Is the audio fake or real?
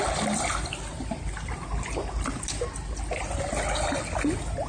real